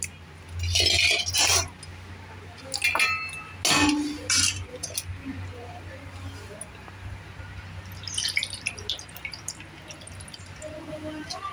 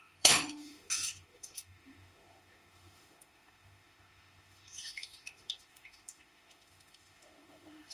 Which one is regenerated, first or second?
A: second